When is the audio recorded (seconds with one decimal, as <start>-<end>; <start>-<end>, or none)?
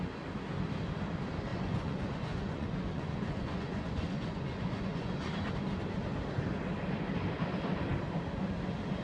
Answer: 0.0-1.5; 5.5-9.0